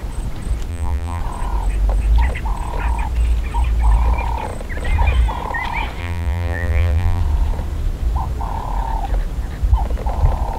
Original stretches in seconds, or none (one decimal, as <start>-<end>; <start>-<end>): 0.0-0.7; 1.2-6.0; 7.2-10.6

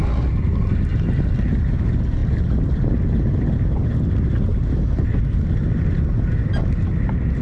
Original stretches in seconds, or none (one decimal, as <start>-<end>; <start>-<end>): 0.0-7.4